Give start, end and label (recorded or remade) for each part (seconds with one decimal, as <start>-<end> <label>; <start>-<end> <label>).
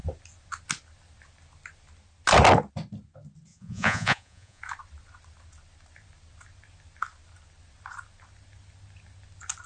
0.0-3.5 recorded; 3.5-4.6 remade; 4.6-9.7 recorded